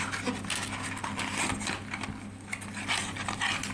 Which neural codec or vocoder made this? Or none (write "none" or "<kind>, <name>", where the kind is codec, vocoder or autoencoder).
none